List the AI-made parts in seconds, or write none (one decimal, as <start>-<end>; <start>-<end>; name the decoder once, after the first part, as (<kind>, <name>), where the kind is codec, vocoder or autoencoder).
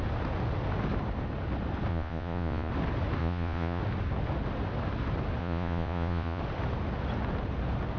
1.9-2.7 (vocoder, Vocos); 3.2-3.8; 5.4-6.4